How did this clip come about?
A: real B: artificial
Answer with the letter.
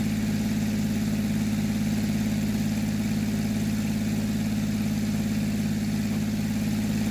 A